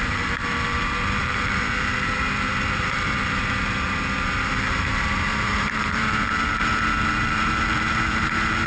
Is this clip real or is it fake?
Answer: fake